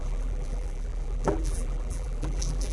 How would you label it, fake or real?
fake